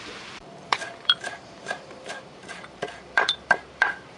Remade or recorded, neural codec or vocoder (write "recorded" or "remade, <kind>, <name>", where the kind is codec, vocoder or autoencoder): remade, vocoder, BigVGAN v2